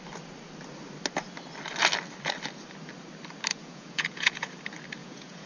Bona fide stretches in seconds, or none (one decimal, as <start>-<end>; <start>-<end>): 0.0-3.5; 4.5-5.0